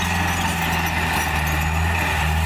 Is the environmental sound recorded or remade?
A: recorded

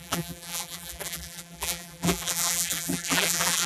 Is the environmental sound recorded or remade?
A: remade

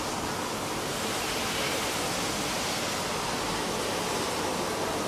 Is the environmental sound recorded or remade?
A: recorded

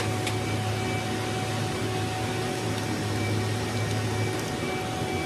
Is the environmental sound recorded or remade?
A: recorded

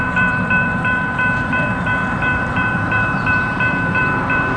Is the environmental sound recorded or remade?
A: remade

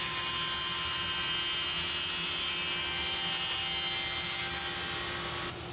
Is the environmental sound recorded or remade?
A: recorded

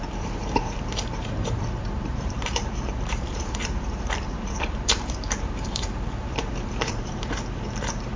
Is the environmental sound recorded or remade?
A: remade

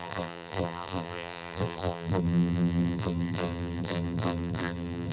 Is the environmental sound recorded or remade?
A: remade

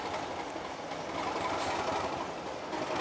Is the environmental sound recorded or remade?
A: recorded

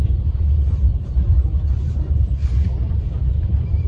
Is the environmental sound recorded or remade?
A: remade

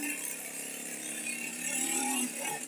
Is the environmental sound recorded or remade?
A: remade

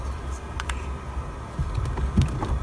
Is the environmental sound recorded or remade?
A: remade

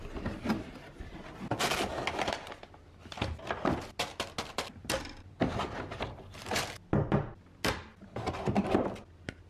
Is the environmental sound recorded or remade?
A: recorded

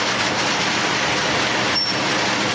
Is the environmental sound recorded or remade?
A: recorded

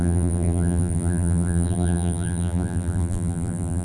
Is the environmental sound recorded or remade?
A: remade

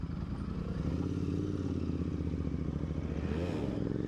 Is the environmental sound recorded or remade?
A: recorded